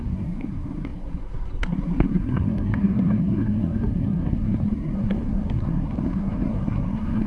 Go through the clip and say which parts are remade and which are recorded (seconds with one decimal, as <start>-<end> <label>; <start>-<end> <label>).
0.0-7.3 remade